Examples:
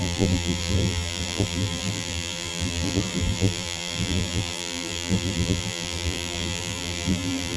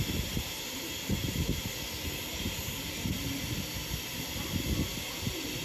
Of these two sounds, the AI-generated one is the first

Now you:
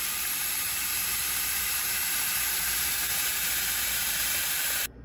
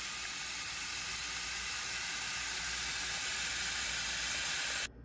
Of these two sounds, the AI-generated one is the first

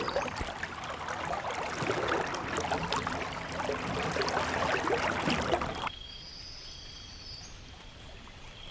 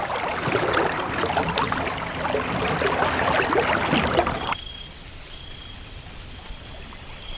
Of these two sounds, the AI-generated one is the second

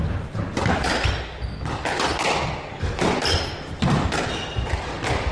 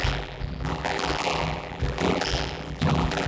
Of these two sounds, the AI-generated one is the second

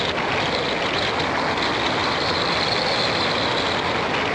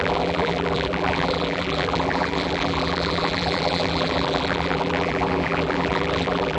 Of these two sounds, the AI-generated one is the second